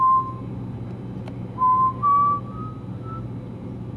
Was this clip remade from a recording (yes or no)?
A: no